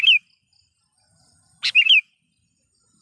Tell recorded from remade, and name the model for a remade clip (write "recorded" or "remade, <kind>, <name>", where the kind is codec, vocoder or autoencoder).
recorded